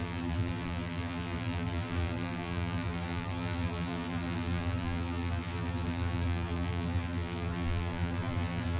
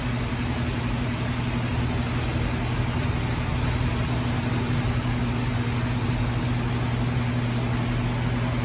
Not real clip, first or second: first